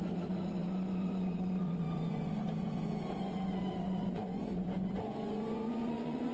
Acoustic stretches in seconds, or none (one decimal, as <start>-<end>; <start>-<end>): none